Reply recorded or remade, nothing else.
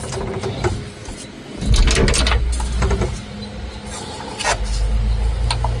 recorded